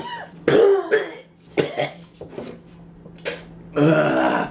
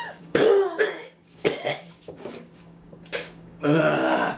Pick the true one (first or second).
first